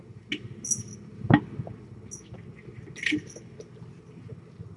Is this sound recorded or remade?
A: recorded